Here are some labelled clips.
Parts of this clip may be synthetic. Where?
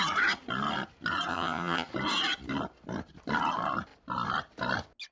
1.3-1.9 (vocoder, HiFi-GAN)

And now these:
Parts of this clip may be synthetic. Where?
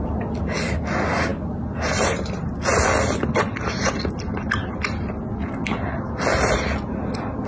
none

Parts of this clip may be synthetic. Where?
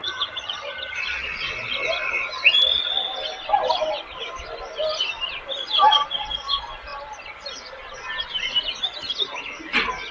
0.0-1.0 (vocoder, HiFi-GAN)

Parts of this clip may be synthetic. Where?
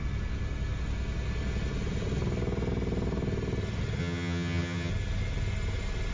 4.0-4.9 (vocoder, HiFi-GAN)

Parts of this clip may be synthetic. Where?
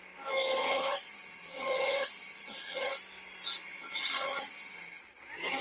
0.6-2.9 (vocoder, HiFi-GAN); 3.6-5.0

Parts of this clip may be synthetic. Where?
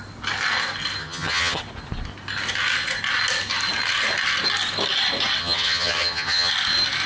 1.0-1.6 (vocoder, HiFi-GAN); 5.4-6.5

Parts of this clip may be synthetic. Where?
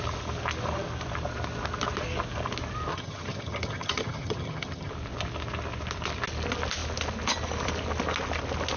2.9-4.9 (vocoder, HiFi-GAN)